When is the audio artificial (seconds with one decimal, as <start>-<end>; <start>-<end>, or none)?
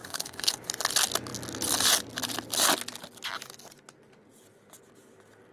0.0-0.6